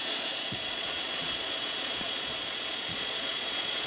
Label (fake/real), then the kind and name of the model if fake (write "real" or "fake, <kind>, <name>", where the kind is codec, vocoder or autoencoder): fake, vocoder, Vocos